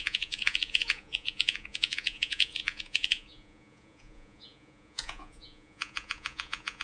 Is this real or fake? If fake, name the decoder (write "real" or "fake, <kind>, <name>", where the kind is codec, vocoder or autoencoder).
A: fake, vocoder, Vocos